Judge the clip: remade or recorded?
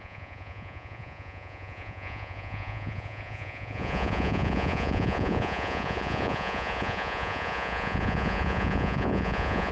remade